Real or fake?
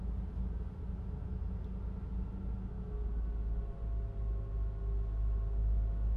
real